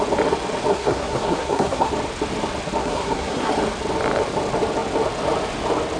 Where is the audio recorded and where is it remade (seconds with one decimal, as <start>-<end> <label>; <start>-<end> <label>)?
0.0-0.7 recorded; 0.7-1.9 remade; 1.9-2.8 recorded; 2.8-3.5 remade; 3.5-6.0 recorded